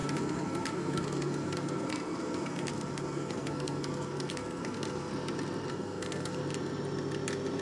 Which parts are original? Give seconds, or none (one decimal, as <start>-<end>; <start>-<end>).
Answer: 5.1-5.7; 6.4-7.6